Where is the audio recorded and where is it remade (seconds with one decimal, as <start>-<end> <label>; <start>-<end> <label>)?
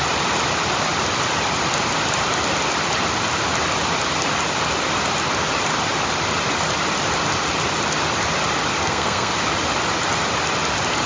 0.0-8.8 recorded; 8.8-9.3 remade; 9.3-11.1 recorded